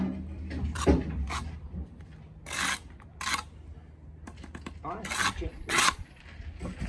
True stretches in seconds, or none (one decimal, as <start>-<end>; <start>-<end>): 0.0-5.5; 6.2-6.9